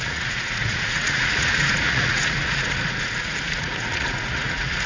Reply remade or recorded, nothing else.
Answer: remade